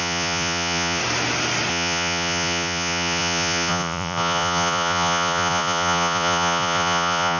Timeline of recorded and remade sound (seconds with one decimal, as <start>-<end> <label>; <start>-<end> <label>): 0.0-1.0 remade; 1.0-1.7 recorded; 1.7-7.4 remade